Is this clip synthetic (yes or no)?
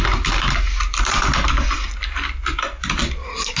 no